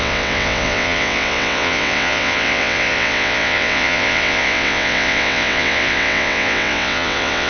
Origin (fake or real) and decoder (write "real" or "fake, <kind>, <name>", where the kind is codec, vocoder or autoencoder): fake, vocoder, WaveNeXt